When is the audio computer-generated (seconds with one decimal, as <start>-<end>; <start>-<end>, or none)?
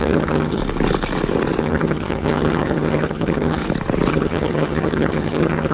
0.0-0.6; 1.6-3.6; 4.1-5.7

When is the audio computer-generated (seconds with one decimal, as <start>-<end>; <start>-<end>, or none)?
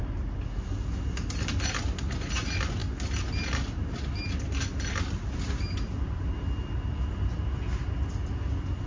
none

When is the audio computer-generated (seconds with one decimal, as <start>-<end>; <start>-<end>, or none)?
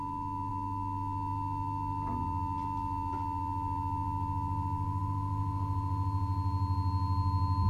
none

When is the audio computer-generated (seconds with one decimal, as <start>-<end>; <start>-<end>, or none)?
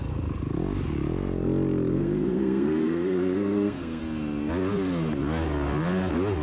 1.9-4.0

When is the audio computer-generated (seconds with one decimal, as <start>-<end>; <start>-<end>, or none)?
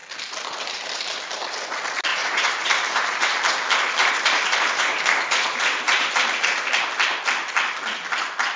2.1-3.4; 4.0-6.7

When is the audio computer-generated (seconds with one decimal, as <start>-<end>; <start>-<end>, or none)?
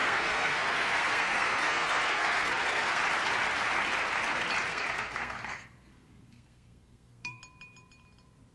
0.0-3.0; 4.7-7.4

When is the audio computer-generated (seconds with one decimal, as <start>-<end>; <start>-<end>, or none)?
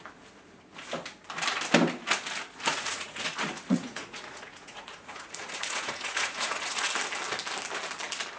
2.7-6.9